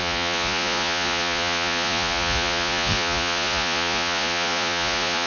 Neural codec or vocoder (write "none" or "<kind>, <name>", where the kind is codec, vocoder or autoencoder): vocoder, Vocos